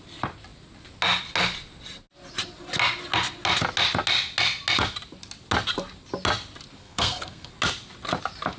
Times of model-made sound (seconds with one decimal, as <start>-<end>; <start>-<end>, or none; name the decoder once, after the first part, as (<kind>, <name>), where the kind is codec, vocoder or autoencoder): 6.8-7.5 (codec, SNAC)